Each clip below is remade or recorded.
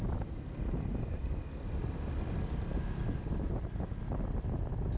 recorded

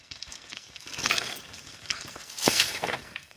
remade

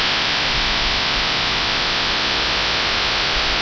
recorded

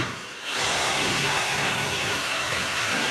remade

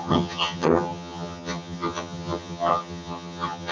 remade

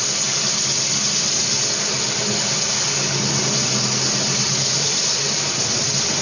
recorded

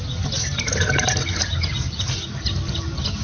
recorded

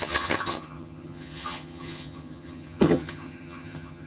remade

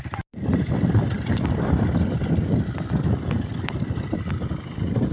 recorded